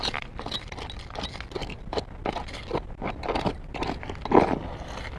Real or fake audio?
real